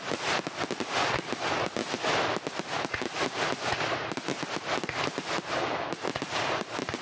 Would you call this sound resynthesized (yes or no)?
no